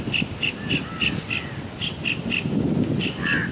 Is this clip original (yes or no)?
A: yes